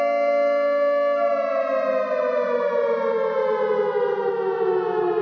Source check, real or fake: real